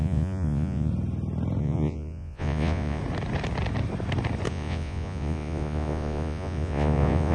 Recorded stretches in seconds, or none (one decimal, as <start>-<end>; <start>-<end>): 0.9-1.6; 3.0-4.5